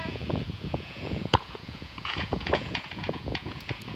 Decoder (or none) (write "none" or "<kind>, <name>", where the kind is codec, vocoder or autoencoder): vocoder, Vocos